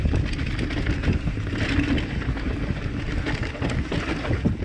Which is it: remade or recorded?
recorded